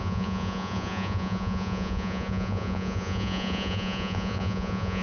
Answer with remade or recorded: remade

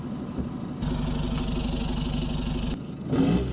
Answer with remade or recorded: recorded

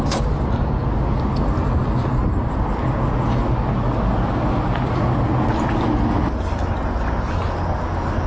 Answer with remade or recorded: recorded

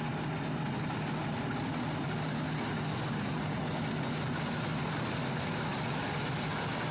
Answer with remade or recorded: recorded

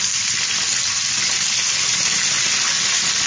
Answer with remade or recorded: recorded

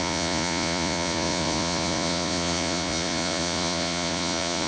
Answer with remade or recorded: remade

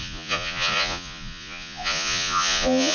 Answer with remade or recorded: remade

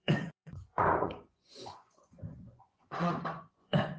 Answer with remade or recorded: remade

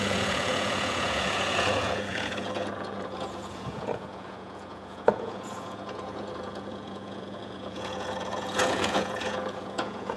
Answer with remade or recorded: remade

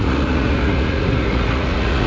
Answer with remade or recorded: remade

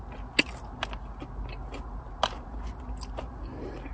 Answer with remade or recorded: recorded